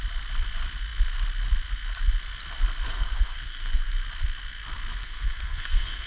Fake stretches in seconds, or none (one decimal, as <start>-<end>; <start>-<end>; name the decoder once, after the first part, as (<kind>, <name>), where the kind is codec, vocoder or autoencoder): 2.9-3.9 (codec, SNAC); 4.9-6.1